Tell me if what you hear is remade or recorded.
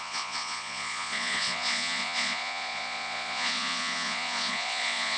remade